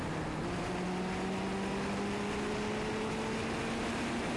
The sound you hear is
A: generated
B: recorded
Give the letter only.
B